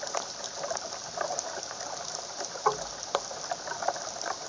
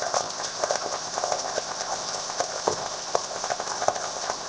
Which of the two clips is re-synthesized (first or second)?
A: second